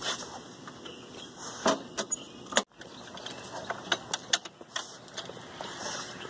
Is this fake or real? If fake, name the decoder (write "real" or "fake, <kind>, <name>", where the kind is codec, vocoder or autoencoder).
real